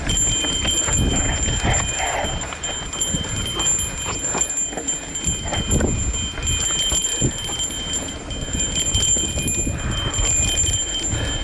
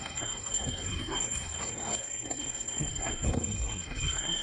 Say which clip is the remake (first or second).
second